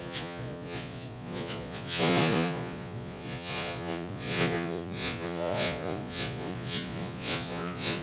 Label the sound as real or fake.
fake